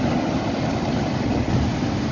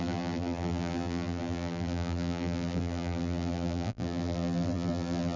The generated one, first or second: second